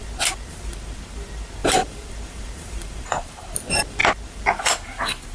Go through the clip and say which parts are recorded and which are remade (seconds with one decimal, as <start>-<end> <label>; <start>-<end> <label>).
0.0-1.6 recorded; 1.6-3.5 remade; 3.5-5.3 recorded